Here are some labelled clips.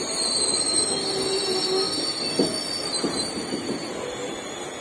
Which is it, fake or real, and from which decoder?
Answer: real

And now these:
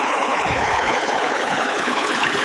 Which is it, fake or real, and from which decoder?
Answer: fake, codec, HILCodec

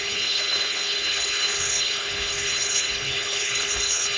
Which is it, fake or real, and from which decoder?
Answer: fake, codec, HILCodec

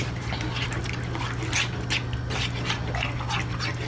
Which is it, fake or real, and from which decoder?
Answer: real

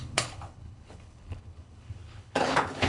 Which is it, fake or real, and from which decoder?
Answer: fake, codec, HILCodec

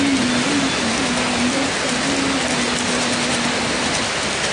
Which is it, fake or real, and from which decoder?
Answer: real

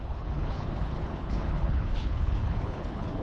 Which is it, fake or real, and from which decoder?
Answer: fake, codec, HILCodec